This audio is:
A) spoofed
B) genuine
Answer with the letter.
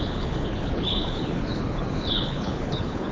A